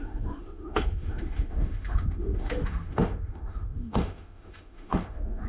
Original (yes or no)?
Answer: no